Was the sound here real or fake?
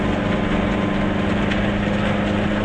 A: real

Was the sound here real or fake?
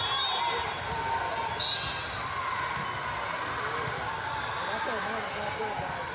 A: real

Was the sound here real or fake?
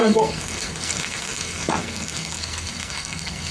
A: fake